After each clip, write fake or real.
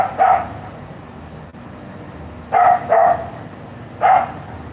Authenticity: real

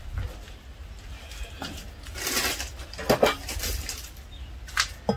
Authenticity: real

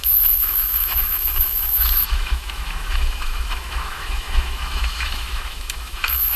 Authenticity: fake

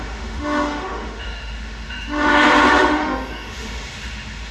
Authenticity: fake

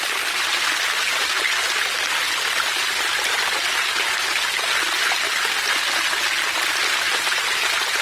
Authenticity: real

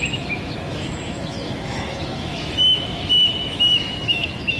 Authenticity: fake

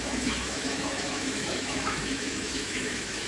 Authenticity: fake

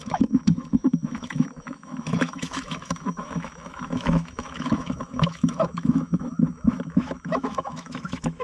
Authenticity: fake